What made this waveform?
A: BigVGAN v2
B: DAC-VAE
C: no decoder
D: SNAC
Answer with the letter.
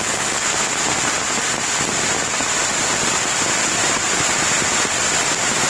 C